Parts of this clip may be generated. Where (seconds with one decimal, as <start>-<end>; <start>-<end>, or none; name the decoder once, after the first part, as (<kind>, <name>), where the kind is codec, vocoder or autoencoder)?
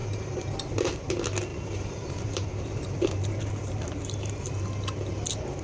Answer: 0.0-1.1 (vocoder, BigVGAN v2); 1.5-4.9